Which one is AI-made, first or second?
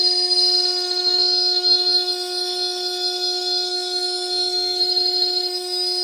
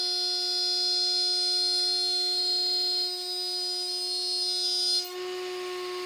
first